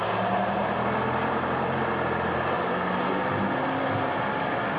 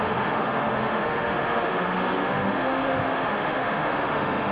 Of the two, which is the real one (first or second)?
first